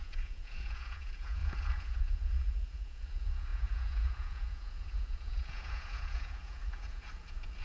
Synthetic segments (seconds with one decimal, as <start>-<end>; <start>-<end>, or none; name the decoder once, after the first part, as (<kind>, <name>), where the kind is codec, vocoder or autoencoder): 0.0-7.6 (vocoder, Vocos)